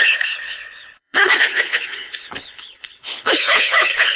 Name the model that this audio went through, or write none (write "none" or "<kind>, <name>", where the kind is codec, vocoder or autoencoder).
codec, HILCodec